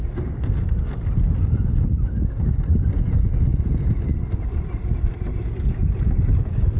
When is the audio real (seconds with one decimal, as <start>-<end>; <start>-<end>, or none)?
0.0-6.8